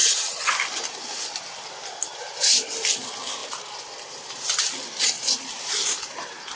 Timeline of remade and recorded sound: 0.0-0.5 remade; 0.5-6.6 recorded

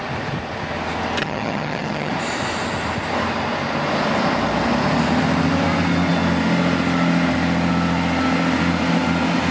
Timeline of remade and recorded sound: 0.0-1.2 recorded; 1.2-2.1 remade; 2.1-9.5 recorded